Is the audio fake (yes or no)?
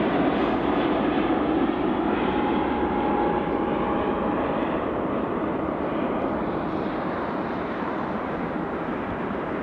no